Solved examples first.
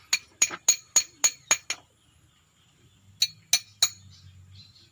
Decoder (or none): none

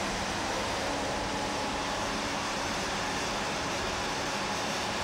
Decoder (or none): vocoder, BigVGAN v2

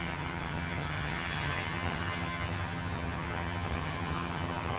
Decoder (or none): vocoder, HiFi-GAN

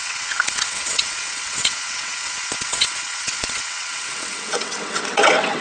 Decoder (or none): vocoder, WaveNeXt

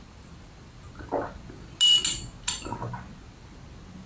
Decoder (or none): none